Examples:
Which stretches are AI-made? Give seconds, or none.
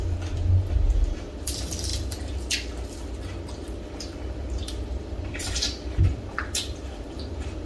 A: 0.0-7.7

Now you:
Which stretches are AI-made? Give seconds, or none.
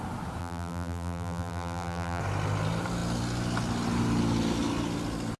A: 0.4-2.2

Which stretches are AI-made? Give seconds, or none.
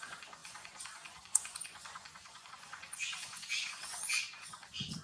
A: 0.0-5.0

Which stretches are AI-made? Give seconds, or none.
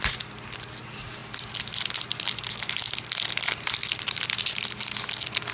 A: none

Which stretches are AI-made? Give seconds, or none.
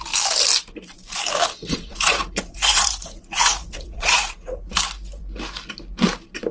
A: 1.6-4.8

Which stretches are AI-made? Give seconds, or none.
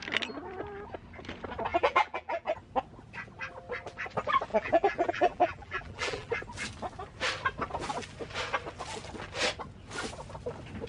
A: 1.7-2.5; 4.5-6.3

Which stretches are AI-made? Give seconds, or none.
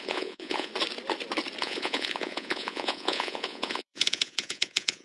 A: 0.0-0.7; 1.6-5.0